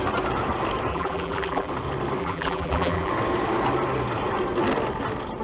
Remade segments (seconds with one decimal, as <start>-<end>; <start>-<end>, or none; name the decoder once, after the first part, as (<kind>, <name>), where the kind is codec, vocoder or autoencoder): 0.9-1.7 (vocoder, BigVGAN v2); 2.2-3.1